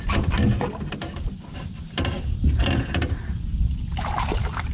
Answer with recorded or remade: recorded